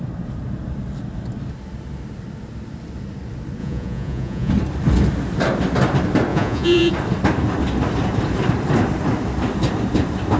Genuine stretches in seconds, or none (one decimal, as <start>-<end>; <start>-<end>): 0.0-3.6; 4.5-6.3; 6.9-10.4